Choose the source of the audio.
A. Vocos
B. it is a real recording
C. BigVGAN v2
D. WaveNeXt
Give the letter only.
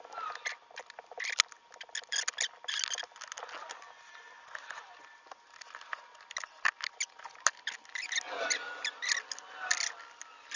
B